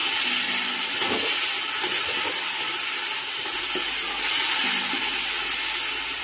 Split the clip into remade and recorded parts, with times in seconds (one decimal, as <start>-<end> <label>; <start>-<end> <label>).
0.0-6.2 recorded